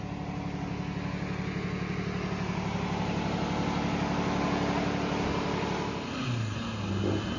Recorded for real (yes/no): yes